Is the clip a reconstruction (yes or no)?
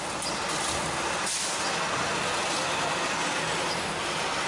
no